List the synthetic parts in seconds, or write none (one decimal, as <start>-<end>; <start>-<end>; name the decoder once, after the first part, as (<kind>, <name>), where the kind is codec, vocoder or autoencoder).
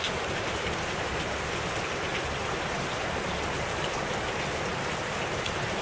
2.1-2.7 (vocoder, BigVGAN v2); 4.7-5.2